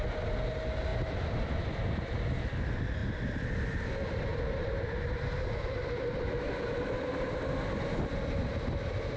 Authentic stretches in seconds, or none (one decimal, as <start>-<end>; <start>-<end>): 0.0-0.9; 2.4-3.0; 3.8-4.3; 7.5-9.2